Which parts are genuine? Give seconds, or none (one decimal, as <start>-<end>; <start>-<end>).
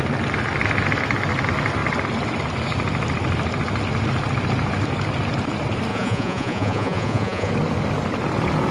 0.0-5.9; 7.5-8.7